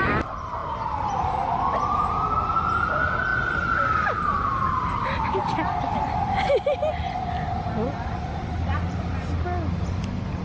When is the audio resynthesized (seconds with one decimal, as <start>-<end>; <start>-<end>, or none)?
0.6-1.6